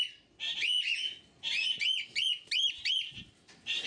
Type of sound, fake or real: real